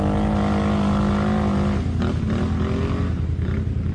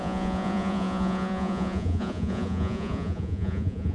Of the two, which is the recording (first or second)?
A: first